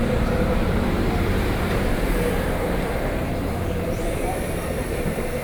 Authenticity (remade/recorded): remade